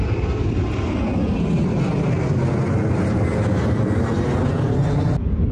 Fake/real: real